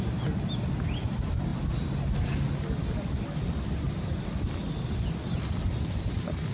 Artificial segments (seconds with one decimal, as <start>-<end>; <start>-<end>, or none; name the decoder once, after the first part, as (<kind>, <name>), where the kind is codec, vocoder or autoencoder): none